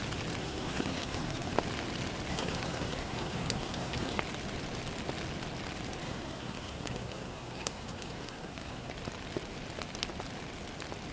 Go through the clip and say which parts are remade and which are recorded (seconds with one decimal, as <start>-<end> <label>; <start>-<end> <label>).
0.0-0.4 recorded; 0.4-1.5 remade; 1.5-2.3 recorded; 2.3-4.2 remade; 4.2-6.0 recorded; 6.0-8.9 remade; 8.9-11.1 recorded